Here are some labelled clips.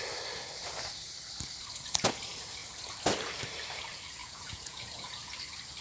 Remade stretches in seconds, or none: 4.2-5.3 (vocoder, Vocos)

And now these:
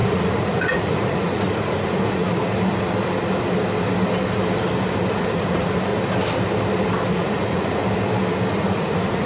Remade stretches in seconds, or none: 0.0-2.4 (vocoder, Vocos); 5.1-5.9; 7.1-7.8; 8.5-9.3

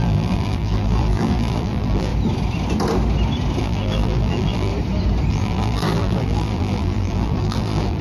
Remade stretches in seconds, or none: 0.0-2.1 (vocoder, BigVGAN v2); 3.6-4.7; 5.3-8.0

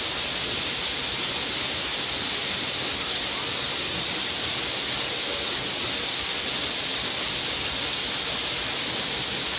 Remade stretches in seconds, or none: none

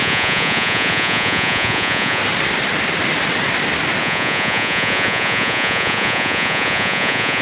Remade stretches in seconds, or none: 0.0-2.2 (vocoder, Vocos); 4.0-7.4

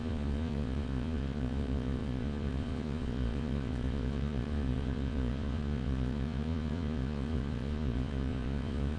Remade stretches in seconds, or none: 0.0-9.0 (vocoder, Vocos)